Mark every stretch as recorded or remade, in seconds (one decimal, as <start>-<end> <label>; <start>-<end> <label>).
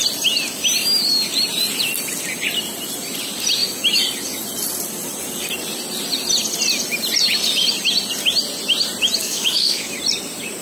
0.0-9.2 recorded; 9.2-9.9 remade; 9.9-10.6 recorded